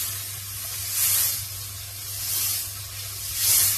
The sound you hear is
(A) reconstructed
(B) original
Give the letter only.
B